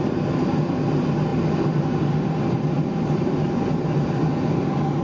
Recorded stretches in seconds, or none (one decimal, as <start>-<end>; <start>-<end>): 0.0-1.3; 4.3-5.0